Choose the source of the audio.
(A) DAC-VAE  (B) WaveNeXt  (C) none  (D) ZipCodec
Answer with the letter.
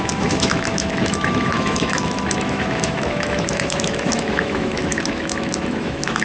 A